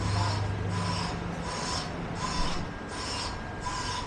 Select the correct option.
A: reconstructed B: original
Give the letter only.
B